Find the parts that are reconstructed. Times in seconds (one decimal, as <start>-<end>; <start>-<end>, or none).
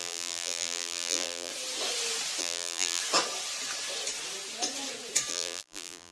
0.0-1.5; 2.4-3.0; 5.3-6.1